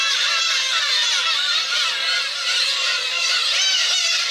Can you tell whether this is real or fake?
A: fake